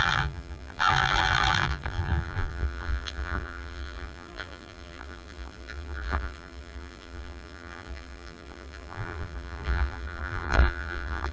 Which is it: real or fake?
fake